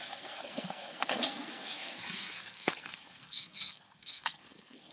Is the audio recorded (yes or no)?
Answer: no